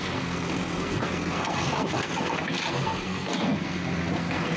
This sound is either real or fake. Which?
fake